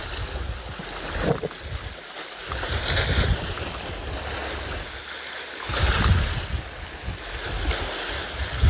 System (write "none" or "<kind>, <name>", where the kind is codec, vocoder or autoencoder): none